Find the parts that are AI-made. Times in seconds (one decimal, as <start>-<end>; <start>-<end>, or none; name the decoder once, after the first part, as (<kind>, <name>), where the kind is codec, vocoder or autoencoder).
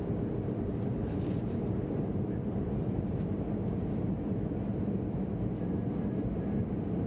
1.0-3.3 (vocoder, BigVGAN v2)